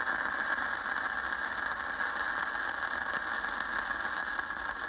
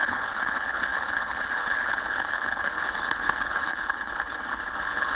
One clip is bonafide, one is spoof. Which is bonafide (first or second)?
first